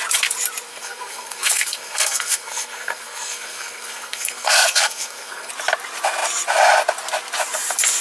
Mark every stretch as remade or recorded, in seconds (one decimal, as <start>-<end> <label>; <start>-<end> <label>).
0.0-0.7 recorded; 0.7-5.5 remade; 5.5-8.0 recorded